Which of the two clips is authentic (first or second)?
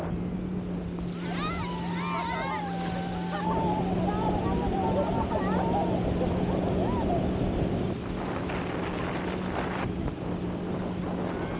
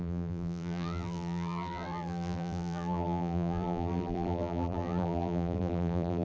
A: first